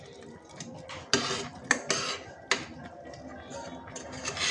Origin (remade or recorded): recorded